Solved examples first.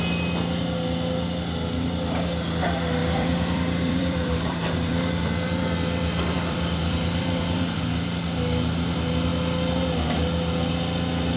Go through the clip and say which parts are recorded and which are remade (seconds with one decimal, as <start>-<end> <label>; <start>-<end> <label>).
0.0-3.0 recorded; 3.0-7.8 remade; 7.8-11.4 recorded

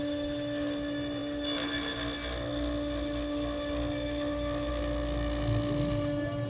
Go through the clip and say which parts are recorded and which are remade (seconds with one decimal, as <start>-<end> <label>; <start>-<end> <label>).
0.0-6.5 recorded

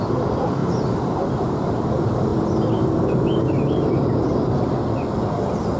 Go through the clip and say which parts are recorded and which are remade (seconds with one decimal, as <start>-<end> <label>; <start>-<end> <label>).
0.0-0.6 remade; 0.6-1.2 recorded; 1.2-2.3 remade; 2.3-5.8 recorded

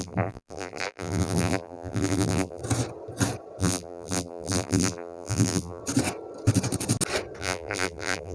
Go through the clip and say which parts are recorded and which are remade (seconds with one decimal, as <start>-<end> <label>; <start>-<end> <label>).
0.0-2.6 remade; 2.6-3.6 recorded; 3.6-5.8 remade; 5.8-7.4 recorded; 7.4-8.3 remade

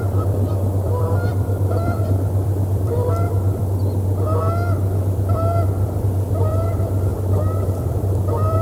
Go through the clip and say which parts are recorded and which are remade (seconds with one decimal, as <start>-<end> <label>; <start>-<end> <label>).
0.0-3.6 remade; 3.6-5.0 recorded; 5.0-7.1 remade; 7.1-7.7 recorded; 7.7-8.6 remade